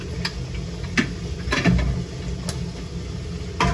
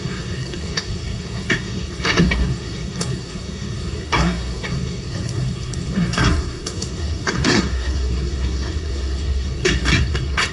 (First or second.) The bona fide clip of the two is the first